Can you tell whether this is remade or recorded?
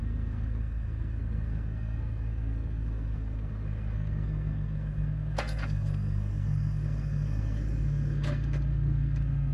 remade